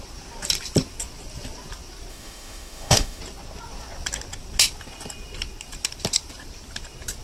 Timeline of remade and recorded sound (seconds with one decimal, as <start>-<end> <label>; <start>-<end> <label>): 0.0-2.1 recorded; 2.1-3.2 remade; 3.2-7.2 recorded